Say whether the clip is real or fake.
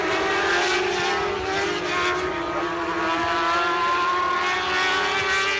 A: real